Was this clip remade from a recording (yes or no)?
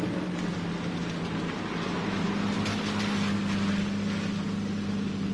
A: no